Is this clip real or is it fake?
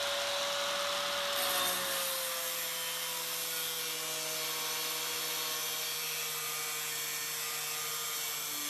real